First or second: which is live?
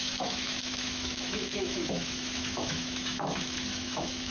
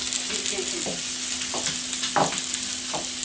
second